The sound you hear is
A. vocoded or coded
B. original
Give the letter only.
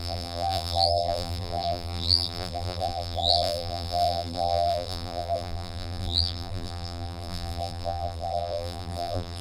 A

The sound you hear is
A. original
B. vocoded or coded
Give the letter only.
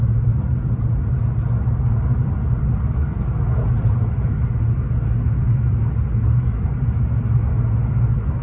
A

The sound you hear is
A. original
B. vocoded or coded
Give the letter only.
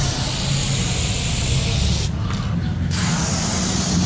A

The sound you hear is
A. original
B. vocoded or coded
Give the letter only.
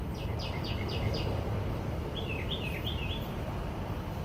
B